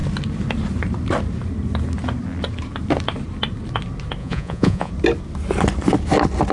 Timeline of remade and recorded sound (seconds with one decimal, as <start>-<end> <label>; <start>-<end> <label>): 0.0-4.2 recorded; 4.2-4.9 remade; 4.9-6.5 recorded